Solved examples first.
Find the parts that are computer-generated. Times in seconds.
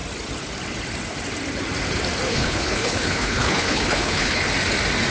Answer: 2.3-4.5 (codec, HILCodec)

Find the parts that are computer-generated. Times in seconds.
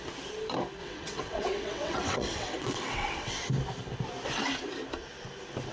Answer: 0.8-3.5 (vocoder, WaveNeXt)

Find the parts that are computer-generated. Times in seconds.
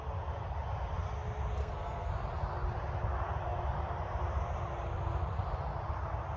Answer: 1.6-2.1 (codec, SNAC)